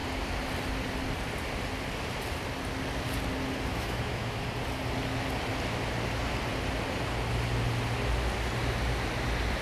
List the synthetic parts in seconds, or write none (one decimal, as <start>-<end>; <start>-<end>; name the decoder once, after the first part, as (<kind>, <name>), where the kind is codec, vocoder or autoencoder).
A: 3.7-4.4 (autoencoder, DAC-VAE)